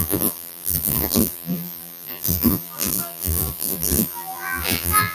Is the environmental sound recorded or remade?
remade